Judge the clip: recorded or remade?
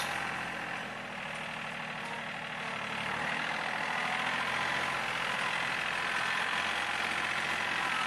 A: recorded